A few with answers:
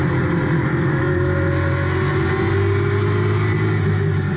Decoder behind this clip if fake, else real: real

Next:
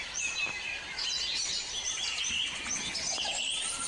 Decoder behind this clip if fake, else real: real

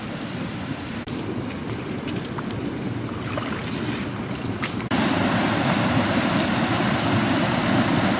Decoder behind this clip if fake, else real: fake, vocoder, BigVGAN v2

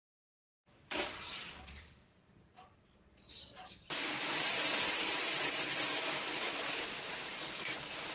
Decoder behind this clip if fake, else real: fake, vocoder, BigVGAN v2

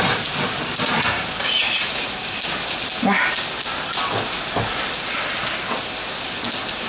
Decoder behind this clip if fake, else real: real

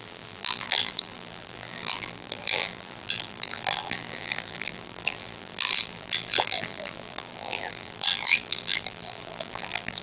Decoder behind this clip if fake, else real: fake, vocoder, BigVGAN v2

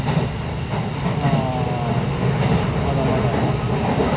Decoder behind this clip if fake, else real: real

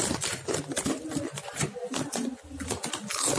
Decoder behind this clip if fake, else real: real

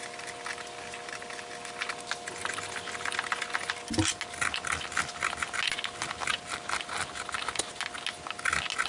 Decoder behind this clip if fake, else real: real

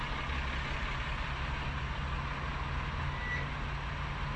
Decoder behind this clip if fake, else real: real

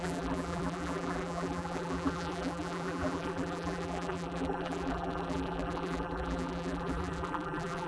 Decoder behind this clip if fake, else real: fake, vocoder, BigVGAN v2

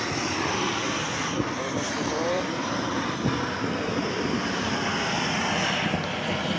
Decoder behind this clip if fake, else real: fake, vocoder, BigVGAN v2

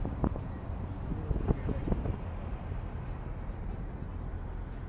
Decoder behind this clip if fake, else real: real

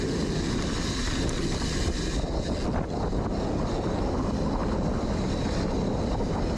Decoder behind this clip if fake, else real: real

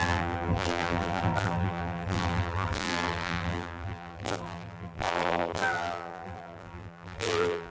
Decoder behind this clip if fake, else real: fake, vocoder, BigVGAN v2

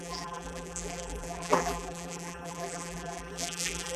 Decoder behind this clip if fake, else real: fake, vocoder, BigVGAN v2